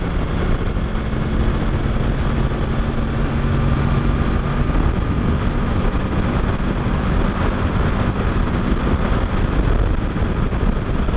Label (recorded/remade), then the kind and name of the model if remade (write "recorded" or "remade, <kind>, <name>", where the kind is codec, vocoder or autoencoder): recorded